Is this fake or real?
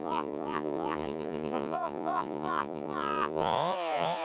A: fake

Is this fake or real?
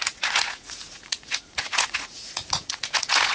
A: fake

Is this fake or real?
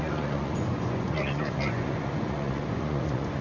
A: fake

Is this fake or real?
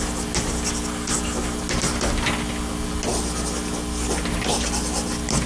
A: real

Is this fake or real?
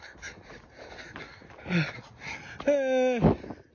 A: real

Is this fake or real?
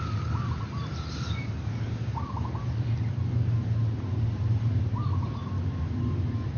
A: real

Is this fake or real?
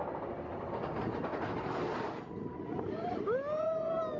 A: real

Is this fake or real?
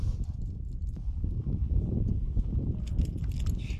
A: real